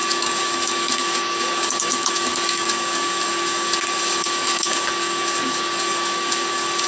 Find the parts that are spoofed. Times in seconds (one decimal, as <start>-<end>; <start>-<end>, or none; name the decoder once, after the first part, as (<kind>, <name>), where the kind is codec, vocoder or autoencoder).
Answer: 0.0-6.9 (codec, DAC)